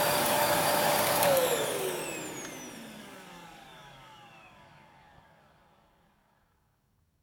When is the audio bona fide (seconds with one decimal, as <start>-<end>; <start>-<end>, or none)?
2.0-3.0